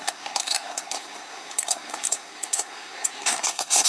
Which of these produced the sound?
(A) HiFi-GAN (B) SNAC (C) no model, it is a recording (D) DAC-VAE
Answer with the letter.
B